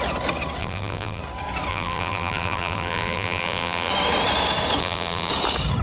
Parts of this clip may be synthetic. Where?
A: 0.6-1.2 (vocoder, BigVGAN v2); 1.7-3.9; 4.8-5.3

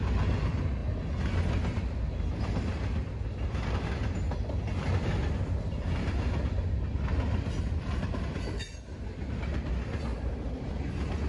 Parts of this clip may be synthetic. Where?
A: 10.1-10.7 (vocoder, BigVGAN v2)

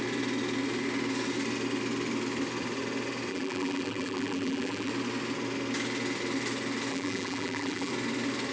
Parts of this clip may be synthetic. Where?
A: 3.3-4.9 (vocoder, BigVGAN v2); 6.9-7.9

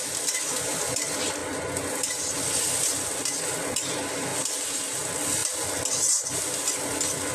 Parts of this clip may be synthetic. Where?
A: none

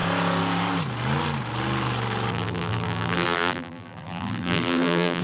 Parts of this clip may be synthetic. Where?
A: 2.3-5.2 (vocoder, BigVGAN v2)